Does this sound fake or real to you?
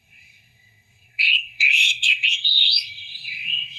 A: fake